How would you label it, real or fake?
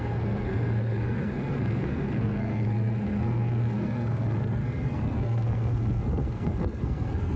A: fake